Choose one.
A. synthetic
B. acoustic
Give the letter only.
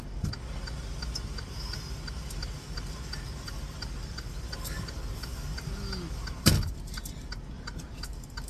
B